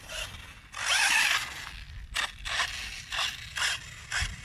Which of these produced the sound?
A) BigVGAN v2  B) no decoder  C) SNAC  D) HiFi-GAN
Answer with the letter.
B